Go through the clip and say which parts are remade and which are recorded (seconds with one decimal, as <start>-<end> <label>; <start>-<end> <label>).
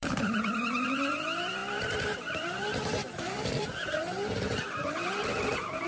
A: 0.0-5.9 remade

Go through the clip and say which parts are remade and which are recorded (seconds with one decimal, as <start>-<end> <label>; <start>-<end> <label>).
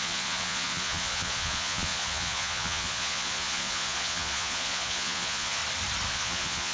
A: 0.0-5.6 remade; 5.6-6.1 recorded; 6.1-6.7 remade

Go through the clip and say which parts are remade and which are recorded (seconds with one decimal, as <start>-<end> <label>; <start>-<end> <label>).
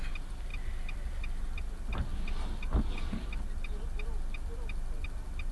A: 0.0-5.5 recorded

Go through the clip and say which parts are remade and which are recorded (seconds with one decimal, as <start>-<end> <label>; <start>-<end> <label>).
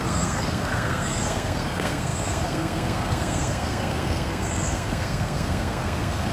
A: 0.0-6.3 remade